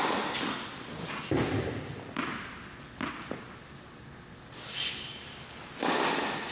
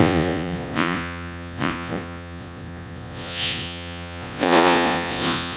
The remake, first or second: second